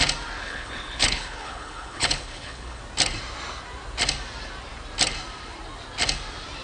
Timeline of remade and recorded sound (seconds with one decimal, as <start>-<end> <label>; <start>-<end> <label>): 0.0-0.4 recorded; 0.4-2.8 remade; 2.8-6.6 recorded